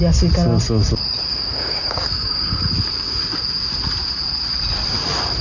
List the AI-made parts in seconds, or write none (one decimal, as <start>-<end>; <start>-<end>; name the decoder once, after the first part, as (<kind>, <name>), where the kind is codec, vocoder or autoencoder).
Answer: 1.3-2.7 (codec, DAC)